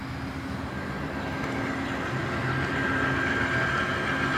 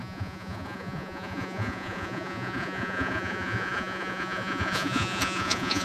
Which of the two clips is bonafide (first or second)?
first